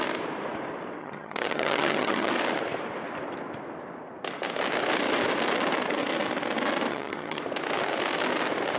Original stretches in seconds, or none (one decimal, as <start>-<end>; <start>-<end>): 0.0-1.0; 2.3-6.9; 7.4-8.8